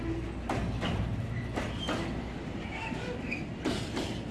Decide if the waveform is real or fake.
real